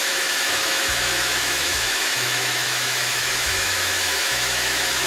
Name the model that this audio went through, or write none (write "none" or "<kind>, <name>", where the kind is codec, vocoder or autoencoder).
autoencoder, DAC-VAE